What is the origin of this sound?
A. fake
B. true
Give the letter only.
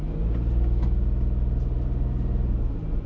B